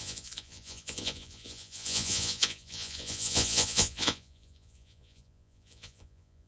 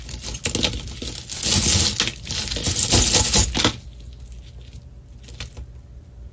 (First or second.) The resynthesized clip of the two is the first